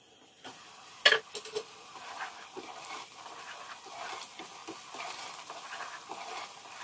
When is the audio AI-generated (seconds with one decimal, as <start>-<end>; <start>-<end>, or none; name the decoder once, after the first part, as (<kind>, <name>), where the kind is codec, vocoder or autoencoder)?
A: none